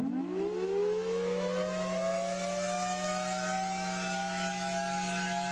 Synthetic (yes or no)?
yes